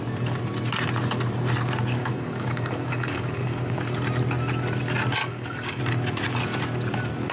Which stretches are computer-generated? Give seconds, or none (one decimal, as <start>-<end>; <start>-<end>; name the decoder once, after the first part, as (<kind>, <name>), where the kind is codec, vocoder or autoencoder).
2.0-3.8 (codec, DAC); 5.2-5.8